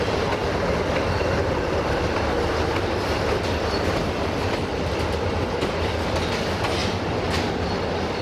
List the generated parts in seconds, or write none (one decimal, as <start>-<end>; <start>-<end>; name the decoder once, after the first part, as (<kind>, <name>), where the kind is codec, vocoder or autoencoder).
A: 6.8-7.5 (vocoder, BigVGAN v2)